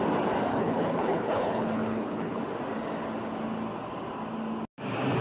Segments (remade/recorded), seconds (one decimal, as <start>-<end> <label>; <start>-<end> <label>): 0.0-0.5 recorded; 0.5-2.4 remade; 2.4-5.2 recorded